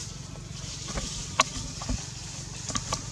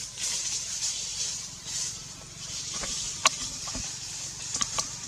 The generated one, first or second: second